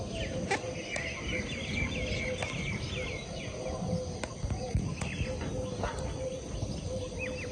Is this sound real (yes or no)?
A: yes